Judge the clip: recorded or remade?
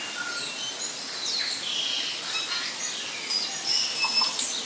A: recorded